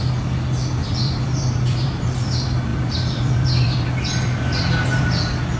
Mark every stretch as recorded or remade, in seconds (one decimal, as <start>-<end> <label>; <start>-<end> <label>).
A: 0.0-0.8 recorded; 0.8-2.3 remade; 2.3-2.7 recorded; 2.7-3.9 remade; 3.9-5.6 recorded